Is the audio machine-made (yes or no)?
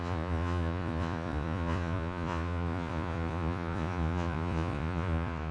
yes